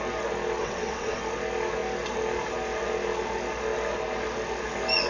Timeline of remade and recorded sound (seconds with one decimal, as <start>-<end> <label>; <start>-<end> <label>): 0.0-0.6 recorded; 0.6-1.2 remade; 1.2-5.1 recorded